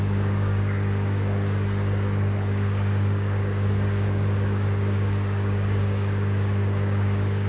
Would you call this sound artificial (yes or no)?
yes